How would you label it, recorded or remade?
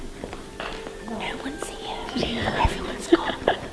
recorded